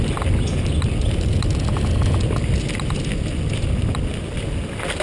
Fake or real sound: real